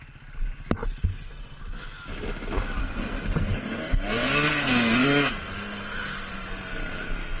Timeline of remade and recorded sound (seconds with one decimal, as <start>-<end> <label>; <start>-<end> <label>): 0.0-1.1 recorded; 1.1-1.6 remade; 1.6-2.8 recorded; 2.8-6.5 remade; 6.5-7.4 recorded